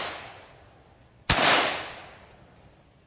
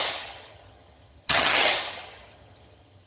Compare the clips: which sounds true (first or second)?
first